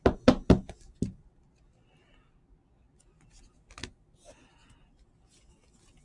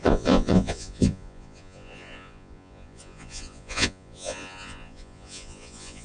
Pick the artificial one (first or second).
second